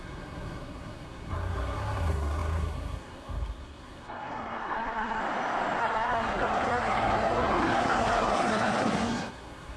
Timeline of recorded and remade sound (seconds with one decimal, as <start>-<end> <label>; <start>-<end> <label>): 0.0-5.2 remade; 5.2-5.8 recorded; 5.8-9.8 remade